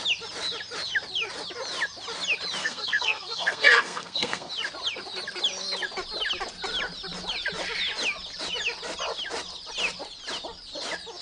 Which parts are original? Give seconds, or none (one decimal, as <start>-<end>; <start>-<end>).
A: 0.0-2.6; 4.5-11.2